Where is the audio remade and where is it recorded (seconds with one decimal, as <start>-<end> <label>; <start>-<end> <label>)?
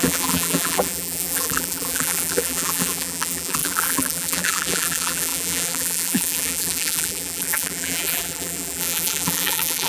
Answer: 0.0-9.9 remade